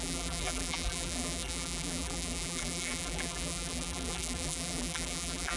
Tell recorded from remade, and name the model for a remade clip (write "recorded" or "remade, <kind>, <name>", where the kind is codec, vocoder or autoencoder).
remade, vocoder, BigVGAN v2